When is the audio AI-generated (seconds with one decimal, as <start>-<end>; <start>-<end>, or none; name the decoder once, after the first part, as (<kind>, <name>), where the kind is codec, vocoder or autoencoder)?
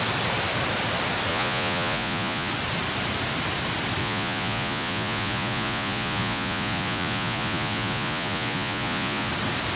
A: 1.3-2.5 (vocoder, Vocos); 4.0-9.3